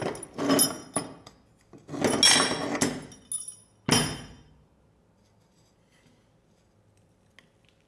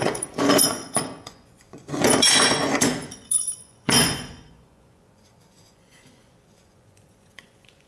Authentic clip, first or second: first